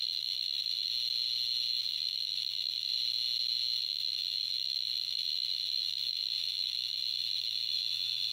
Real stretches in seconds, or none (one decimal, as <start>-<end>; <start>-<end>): 0.9-1.8; 2.9-3.8